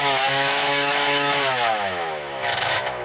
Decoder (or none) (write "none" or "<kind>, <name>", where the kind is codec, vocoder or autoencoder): autoencoder, DAC-VAE